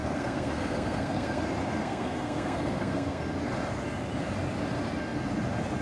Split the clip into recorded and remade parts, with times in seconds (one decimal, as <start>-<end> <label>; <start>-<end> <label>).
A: 0.0-1.4 remade; 1.4-1.8 recorded; 1.8-3.2 remade; 3.2-5.8 recorded

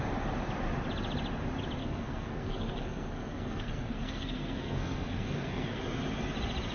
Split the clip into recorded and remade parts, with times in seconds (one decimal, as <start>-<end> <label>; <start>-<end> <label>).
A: 0.0-1.8 recorded; 1.8-5.8 remade; 5.8-6.7 recorded

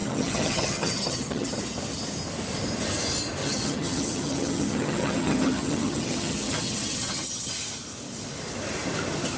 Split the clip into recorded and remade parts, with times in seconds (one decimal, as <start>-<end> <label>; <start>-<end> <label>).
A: 0.0-1.5 remade; 1.5-3.4 recorded; 3.4-7.5 remade; 7.5-9.4 recorded

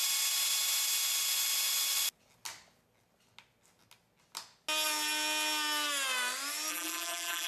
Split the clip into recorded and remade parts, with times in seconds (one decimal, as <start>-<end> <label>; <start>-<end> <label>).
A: 0.0-6.7 recorded; 6.7-7.5 remade

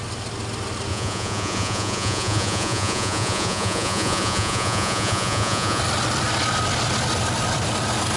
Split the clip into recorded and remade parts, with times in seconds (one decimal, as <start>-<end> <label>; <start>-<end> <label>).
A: 0.0-0.9 recorded; 0.9-5.8 remade; 5.8-8.2 recorded

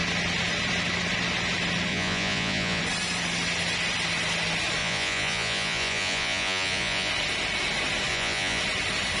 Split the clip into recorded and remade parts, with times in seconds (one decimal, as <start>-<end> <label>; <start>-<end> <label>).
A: 0.0-1.9 recorded; 1.9-2.8 remade; 2.8-4.8 recorded; 4.8-7.1 remade; 7.1-8.1 recorded; 8.1-8.6 remade; 8.6-9.2 recorded